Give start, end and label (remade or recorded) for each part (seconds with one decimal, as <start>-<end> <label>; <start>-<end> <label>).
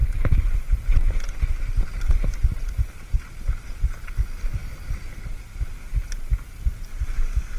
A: 0.0-2.0 remade; 2.0-4.6 recorded; 4.6-6.6 remade; 6.6-7.6 recorded